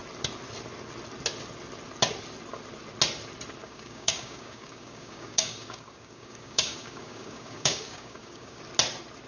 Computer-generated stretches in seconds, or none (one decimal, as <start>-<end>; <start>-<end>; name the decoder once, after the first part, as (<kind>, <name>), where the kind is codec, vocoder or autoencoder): 3.6-8.6 (codec, DAC)